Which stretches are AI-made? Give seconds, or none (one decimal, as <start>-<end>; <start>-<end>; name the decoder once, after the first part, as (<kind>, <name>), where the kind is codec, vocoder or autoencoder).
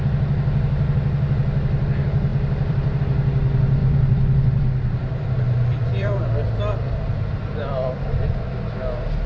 2.3-3.0 (vocoder, BigVGAN v2); 3.8-8.8